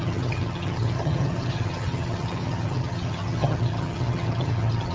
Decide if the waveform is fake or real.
fake